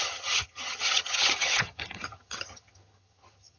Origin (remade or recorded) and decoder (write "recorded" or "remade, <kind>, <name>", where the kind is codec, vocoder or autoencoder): remade, vocoder, HiFi-GAN